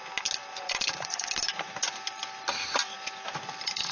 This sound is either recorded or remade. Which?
recorded